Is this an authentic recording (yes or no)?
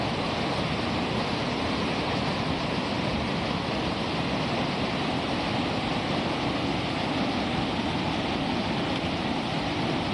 yes